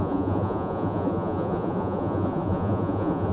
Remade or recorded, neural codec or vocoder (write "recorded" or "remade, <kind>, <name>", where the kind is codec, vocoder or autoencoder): remade, vocoder, Vocos